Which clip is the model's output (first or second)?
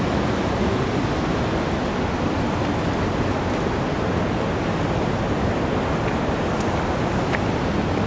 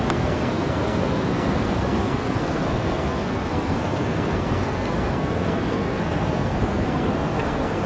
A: second